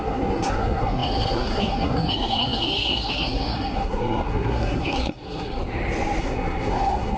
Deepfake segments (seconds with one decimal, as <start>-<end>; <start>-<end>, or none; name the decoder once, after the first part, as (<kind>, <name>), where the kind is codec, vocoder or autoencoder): 0.0-5.6 (codec, SNAC); 6.2-7.2